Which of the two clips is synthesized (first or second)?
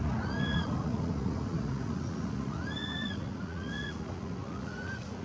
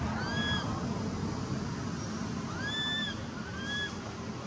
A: first